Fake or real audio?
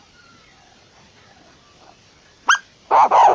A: real